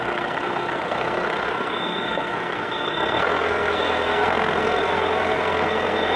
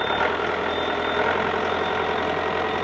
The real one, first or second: second